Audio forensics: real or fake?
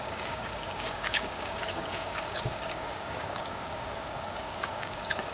fake